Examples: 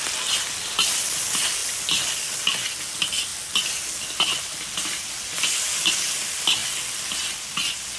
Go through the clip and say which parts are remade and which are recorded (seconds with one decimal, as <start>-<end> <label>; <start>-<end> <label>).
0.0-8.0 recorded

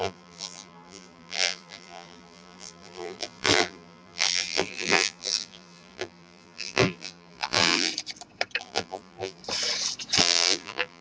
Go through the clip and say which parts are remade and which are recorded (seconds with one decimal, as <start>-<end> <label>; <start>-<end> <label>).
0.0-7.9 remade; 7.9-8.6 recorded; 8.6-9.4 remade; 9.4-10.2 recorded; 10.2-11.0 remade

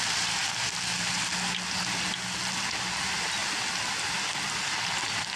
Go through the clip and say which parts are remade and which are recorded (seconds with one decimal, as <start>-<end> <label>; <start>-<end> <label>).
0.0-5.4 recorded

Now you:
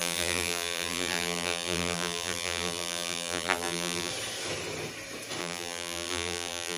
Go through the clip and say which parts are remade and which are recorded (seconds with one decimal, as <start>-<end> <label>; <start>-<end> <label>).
0.0-4.1 remade; 4.1-5.4 recorded; 5.4-6.8 remade

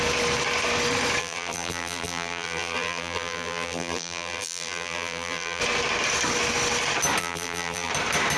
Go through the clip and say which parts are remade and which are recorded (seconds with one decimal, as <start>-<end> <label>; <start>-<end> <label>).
0.0-1.2 recorded; 1.2-5.6 remade; 5.6-7.2 recorded; 7.2-7.9 remade; 7.9-8.4 recorded

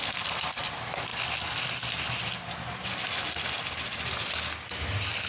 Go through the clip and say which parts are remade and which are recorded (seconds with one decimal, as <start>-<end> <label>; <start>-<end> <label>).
0.0-5.3 recorded

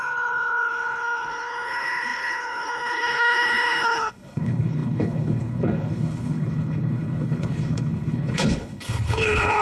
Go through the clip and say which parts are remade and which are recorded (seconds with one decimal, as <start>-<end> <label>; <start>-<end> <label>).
0.0-9.6 remade